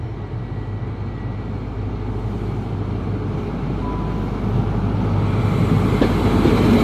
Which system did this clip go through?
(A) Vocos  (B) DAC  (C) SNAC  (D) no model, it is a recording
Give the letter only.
D